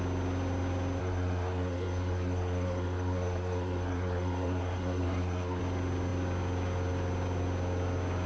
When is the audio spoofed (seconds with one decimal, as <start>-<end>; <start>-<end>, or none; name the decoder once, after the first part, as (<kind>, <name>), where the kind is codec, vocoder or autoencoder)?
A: 1.0-5.6 (codec, SNAC)